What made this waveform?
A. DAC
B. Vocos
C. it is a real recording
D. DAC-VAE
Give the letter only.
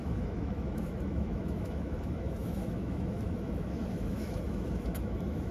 D